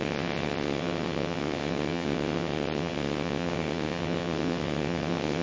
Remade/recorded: remade